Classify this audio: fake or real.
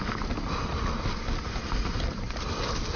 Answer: real